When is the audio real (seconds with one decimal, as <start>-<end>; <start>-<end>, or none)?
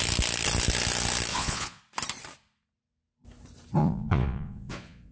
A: 0.0-1.3; 1.8-3.8